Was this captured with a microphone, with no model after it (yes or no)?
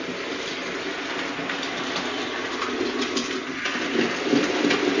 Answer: yes